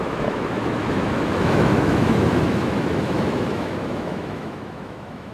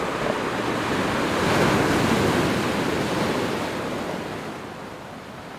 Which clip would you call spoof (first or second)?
first